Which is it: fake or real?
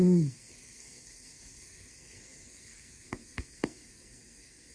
fake